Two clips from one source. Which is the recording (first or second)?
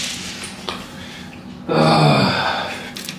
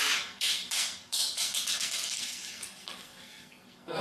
first